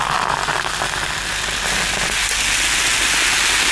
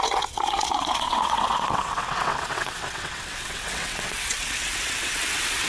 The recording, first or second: first